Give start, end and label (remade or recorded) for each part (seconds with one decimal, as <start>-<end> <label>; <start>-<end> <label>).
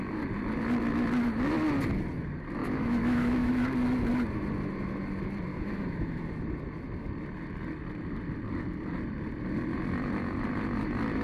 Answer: 0.0-2.6 recorded; 2.6-3.5 remade; 3.5-5.5 recorded; 5.5-6.2 remade; 6.2-11.2 recorded